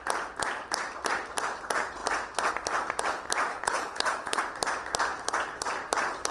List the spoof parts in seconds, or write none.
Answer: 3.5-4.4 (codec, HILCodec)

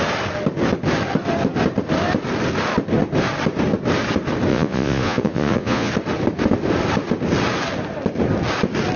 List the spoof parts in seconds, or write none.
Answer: 4.5-5.9 (vocoder, Vocos)

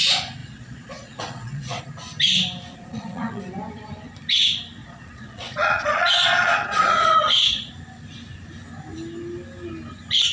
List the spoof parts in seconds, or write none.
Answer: 0.4-1.8 (vocoder, Vocos); 2.7-3.4; 4.8-7.7